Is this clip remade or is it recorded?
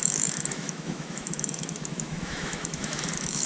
remade